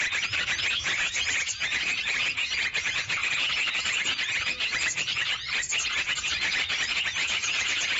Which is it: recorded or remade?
remade